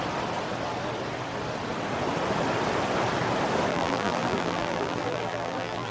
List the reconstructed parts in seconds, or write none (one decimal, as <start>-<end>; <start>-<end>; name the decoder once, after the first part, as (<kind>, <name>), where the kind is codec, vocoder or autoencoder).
3.7-5.9 (vocoder, BigVGAN v2)